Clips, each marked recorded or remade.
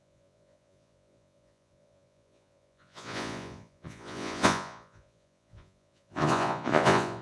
remade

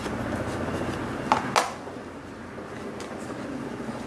recorded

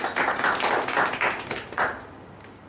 recorded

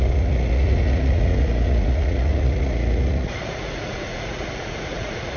remade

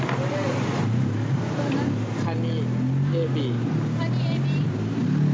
recorded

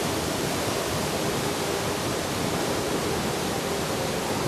recorded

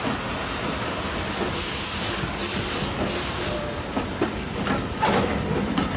recorded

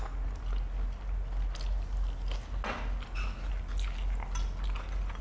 recorded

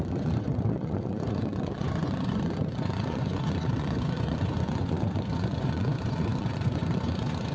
remade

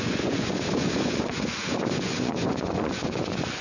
remade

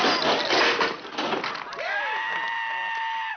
recorded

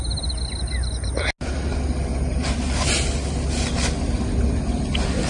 recorded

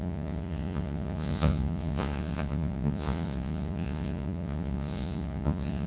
remade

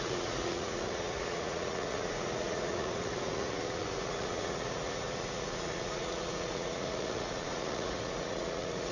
remade